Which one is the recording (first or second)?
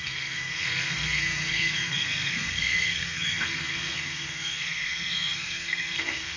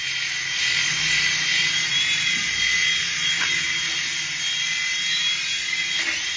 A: second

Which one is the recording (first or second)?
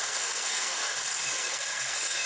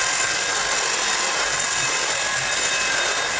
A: second